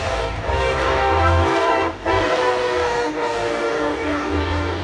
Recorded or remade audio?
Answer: remade